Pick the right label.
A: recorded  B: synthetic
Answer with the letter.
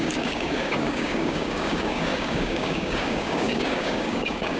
B